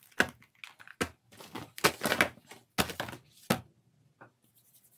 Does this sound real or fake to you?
real